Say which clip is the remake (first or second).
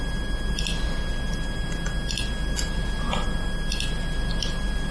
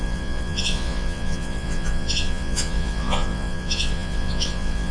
second